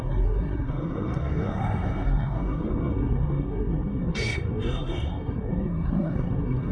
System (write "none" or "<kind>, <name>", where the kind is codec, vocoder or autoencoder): codec, SNAC